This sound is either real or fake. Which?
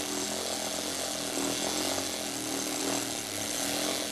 real